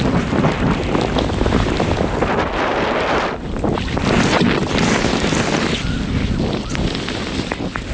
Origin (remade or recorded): recorded